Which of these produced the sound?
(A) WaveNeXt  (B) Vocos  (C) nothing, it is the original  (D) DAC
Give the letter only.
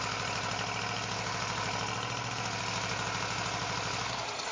C